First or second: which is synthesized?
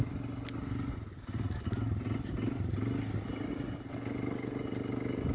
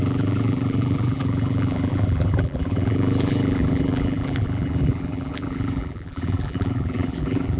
second